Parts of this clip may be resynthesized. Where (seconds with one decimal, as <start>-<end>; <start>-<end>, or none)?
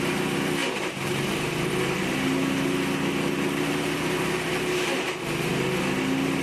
none